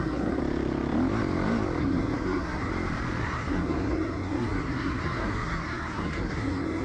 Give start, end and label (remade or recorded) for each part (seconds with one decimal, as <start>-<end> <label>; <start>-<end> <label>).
0.0-0.4 remade; 0.4-1.8 recorded; 1.8-2.7 remade; 2.7-3.2 recorded; 3.2-6.8 remade